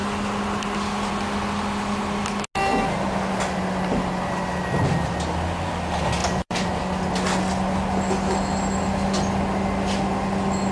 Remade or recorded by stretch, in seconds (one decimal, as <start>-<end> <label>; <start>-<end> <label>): 0.0-6.2 recorded; 6.2-6.8 remade; 6.8-10.7 recorded